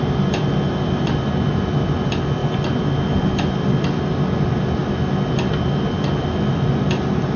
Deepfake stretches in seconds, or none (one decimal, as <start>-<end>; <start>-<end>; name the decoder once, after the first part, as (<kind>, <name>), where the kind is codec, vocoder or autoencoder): none